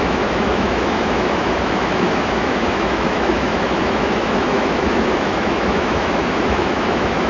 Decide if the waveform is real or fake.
fake